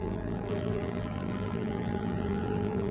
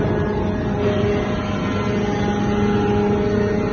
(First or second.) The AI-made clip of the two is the first